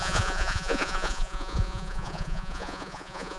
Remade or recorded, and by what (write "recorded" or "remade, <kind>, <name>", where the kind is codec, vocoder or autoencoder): remade, vocoder, Vocos